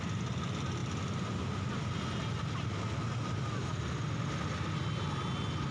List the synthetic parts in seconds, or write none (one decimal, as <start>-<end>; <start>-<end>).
none